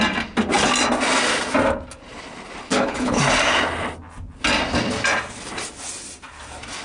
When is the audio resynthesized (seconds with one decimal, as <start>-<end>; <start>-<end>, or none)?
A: 2.6-3.2